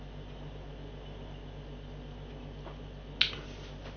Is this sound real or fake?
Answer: real